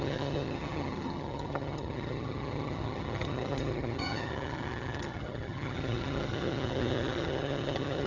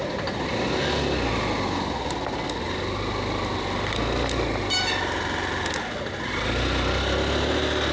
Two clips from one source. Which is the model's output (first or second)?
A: first